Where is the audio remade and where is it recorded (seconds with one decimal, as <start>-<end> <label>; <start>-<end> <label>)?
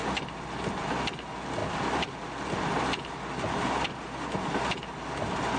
0.0-5.6 recorded